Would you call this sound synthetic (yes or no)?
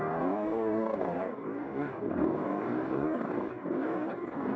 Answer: yes